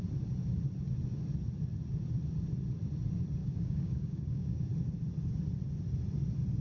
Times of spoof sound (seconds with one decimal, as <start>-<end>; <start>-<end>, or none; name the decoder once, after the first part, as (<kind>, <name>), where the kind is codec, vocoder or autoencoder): 3.4-4.7 (codec, DAC)